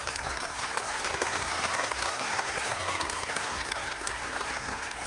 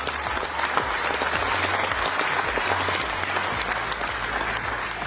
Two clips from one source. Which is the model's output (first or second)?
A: first